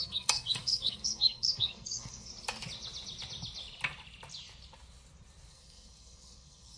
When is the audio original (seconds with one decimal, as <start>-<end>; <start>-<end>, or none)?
2.3-5.5